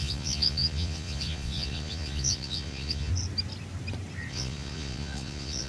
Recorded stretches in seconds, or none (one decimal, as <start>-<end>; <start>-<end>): 3.1-4.3